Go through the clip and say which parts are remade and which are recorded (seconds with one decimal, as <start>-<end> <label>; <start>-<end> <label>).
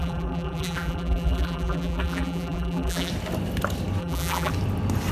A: 0.0-3.1 remade; 3.1-4.0 recorded; 4.0-4.5 remade; 4.5-5.1 recorded